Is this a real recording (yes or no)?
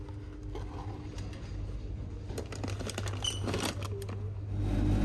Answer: yes